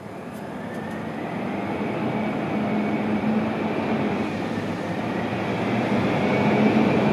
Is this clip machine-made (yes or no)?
no